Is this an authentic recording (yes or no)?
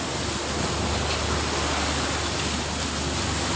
yes